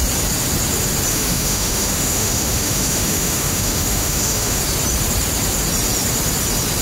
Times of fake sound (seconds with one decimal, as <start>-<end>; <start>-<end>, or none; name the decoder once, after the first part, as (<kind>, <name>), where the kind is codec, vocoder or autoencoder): 1.1-4.6 (autoencoder, DAC-VAE)